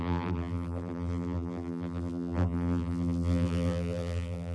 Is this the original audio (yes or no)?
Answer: no